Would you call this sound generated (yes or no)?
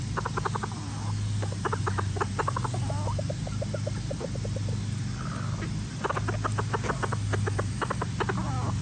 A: no